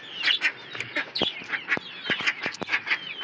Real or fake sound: real